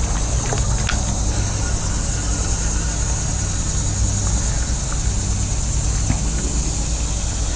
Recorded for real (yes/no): yes